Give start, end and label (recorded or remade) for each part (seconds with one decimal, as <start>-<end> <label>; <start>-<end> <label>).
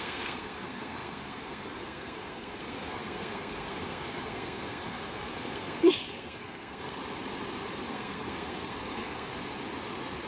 0.0-7.0 remade; 7.0-7.9 recorded; 7.9-9.3 remade; 9.3-10.3 recorded